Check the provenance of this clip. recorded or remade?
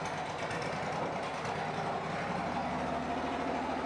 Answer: recorded